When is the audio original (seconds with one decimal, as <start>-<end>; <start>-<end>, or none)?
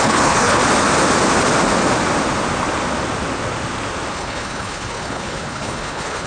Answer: 0.6-4.1